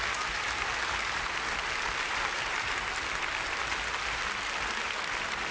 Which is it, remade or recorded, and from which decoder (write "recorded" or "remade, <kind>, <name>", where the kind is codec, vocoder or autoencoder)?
recorded